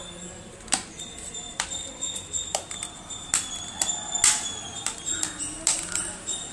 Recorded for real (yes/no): yes